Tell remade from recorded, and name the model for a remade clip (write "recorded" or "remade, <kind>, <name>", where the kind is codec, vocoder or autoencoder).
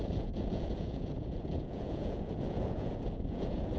remade, vocoder, Vocos